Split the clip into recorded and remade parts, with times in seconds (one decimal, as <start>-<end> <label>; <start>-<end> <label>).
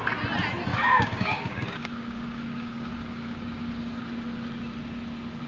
0.0-0.7 recorded; 0.7-4.0 remade; 4.0-5.5 recorded